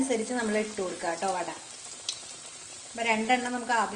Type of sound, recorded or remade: recorded